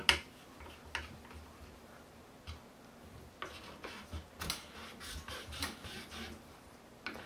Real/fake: real